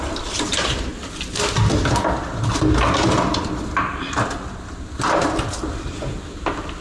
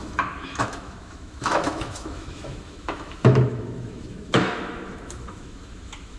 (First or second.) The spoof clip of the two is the second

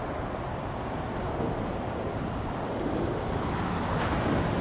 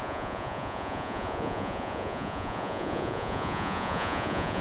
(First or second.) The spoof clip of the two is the second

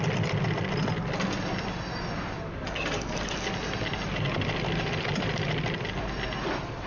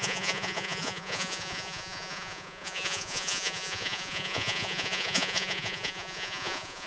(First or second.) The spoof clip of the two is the second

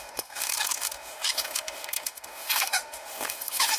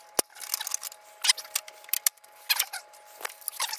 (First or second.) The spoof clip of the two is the first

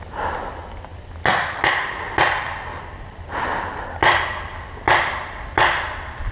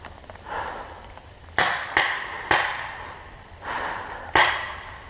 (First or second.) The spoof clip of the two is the second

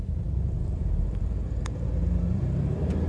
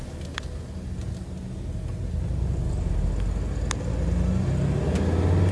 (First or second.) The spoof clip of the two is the first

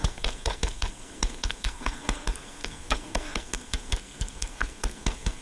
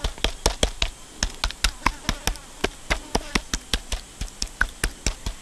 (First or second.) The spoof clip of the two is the first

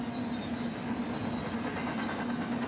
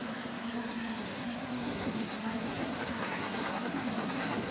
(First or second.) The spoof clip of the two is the second